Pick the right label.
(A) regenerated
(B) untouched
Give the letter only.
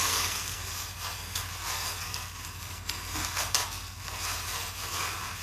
A